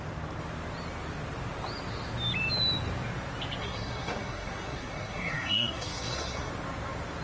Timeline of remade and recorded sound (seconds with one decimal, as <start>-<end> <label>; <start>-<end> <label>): 0.0-3.6 recorded; 3.6-6.5 remade; 6.5-7.2 recorded